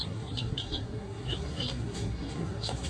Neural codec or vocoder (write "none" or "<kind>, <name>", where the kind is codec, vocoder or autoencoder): codec, SNAC